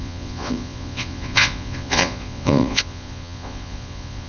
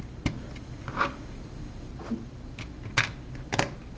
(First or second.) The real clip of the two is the second